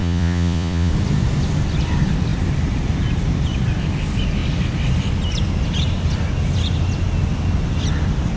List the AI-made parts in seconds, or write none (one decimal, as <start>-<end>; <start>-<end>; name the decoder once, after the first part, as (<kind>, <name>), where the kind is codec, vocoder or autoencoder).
0.0-0.9 (vocoder, Vocos)